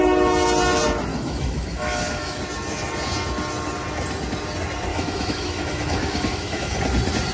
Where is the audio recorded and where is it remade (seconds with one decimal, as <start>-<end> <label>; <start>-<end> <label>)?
0.0-1.1 recorded; 1.1-2.4 remade; 2.4-4.9 recorded; 4.9-6.8 remade; 6.8-7.3 recorded